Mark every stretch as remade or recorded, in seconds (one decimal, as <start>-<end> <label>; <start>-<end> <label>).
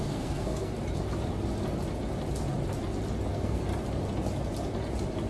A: 0.0-0.7 remade; 0.7-3.3 recorded; 3.3-3.7 remade; 3.7-5.3 recorded